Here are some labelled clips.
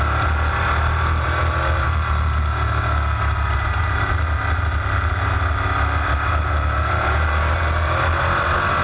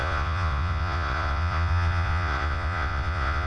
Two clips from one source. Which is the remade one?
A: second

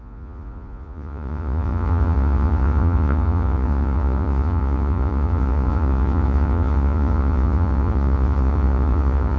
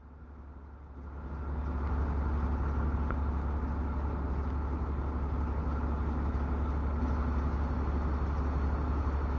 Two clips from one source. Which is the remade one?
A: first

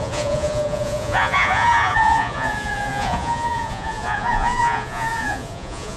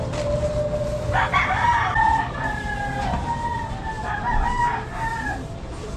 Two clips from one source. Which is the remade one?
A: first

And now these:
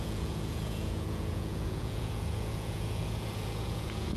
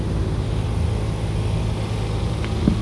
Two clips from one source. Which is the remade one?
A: first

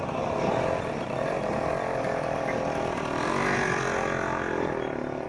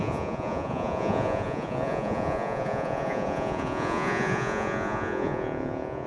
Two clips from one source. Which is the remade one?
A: second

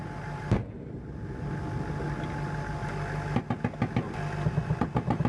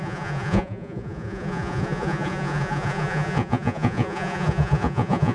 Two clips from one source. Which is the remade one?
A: second